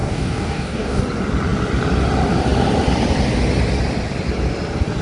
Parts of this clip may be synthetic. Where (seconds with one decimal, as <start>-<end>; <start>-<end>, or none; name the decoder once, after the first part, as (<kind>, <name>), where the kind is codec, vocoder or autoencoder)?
0.0-1.0 (codec, DAC)